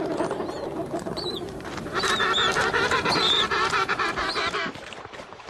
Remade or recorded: remade